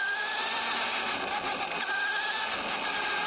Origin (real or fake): real